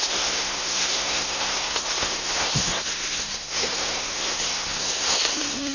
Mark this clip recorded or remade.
remade